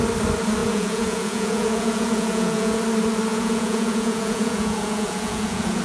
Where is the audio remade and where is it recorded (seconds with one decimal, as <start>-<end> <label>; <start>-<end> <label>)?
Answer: 0.0-0.6 recorded; 0.6-2.8 remade; 2.8-3.3 recorded; 3.3-5.8 remade

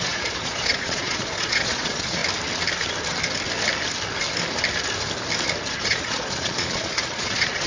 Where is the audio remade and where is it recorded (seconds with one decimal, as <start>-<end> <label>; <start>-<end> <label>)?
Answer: 0.0-2.2 remade; 2.2-5.8 recorded; 5.8-7.7 remade

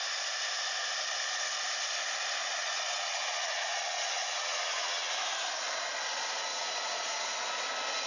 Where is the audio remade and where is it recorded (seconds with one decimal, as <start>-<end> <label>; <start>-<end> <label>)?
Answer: 0.0-2.4 recorded; 2.4-5.1 remade; 5.1-6.5 recorded; 6.5-7.2 remade; 7.2-8.1 recorded

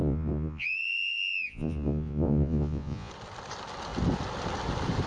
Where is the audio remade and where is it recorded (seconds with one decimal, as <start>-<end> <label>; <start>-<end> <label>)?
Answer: 0.0-3.1 remade; 3.1-5.1 recorded

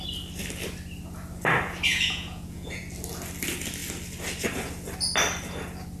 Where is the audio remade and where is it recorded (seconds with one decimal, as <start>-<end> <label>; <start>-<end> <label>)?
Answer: 0.0-1.9 recorded; 1.9-2.8 remade; 2.8-6.0 recorded

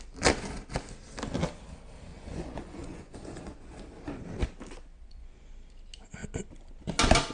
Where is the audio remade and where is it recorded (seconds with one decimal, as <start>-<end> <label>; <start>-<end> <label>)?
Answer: 0.0-2.1 recorded; 2.1-3.8 remade; 3.8-4.9 recorded; 4.9-5.5 remade; 5.5-7.3 recorded

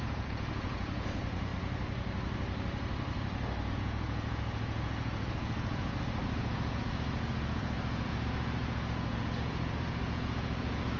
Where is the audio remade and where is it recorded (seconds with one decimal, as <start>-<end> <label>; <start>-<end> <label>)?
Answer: 0.0-1.5 remade; 1.5-3.7 recorded; 3.7-11.0 remade

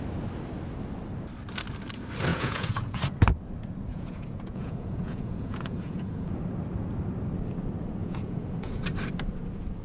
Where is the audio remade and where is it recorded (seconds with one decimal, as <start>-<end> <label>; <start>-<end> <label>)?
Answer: 0.0-2.3 recorded; 2.3-3.0 remade; 3.0-3.9 recorded; 3.9-6.4 remade; 6.4-8.0 recorded; 8.0-8.8 remade; 8.8-9.8 recorded